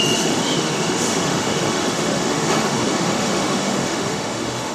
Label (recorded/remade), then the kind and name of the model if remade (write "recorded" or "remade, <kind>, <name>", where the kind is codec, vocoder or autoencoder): remade, autoencoder, DAC-VAE